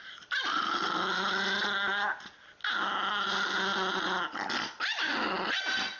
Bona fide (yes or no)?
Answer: yes